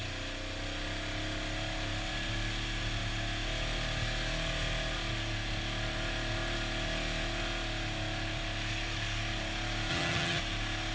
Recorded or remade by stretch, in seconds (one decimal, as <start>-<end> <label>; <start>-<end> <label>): 0.0-9.9 recorded; 9.9-10.4 remade; 10.4-10.9 recorded